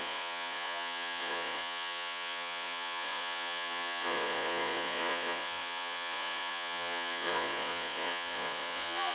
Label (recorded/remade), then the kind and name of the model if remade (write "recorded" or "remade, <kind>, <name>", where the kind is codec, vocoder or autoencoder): remade, vocoder, Vocos